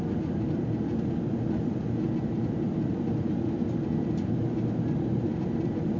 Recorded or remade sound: recorded